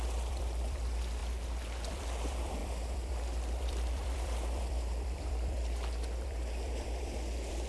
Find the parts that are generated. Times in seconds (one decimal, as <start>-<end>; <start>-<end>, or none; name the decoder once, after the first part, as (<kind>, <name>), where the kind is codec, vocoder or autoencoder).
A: 0.0-1.2 (vocoder, BigVGAN v2); 1.9-7.7